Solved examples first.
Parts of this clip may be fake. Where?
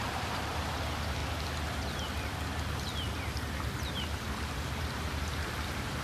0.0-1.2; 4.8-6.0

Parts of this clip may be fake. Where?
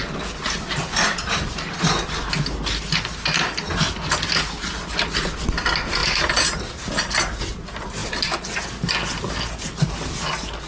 6.0-6.9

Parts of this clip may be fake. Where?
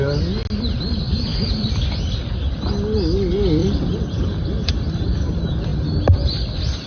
1.3-2.0; 3.6-4.7